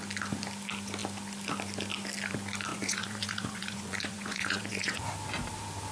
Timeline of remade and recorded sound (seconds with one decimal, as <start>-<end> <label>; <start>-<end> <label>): 0.0-2.7 recorded; 2.7-5.1 remade; 5.1-5.9 recorded